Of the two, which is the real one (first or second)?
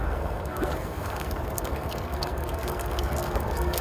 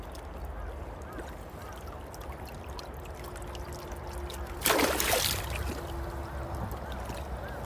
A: second